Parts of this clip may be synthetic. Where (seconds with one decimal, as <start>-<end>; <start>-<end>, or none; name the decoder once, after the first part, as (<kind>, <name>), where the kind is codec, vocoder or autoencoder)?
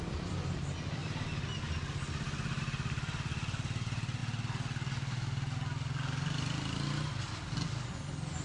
none